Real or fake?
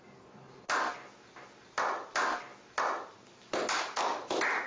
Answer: real